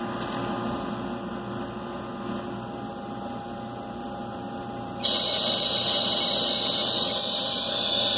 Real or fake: real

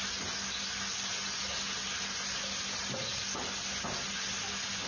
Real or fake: real